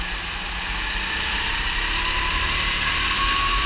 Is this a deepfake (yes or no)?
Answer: no